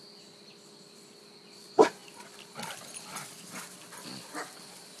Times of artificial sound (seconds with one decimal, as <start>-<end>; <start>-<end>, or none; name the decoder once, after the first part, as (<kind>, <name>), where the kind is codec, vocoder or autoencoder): none